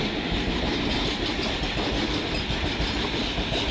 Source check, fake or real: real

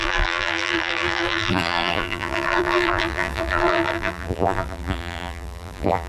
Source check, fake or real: fake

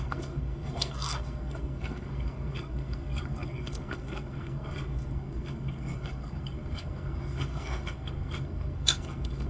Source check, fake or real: fake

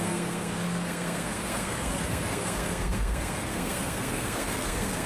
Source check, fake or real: fake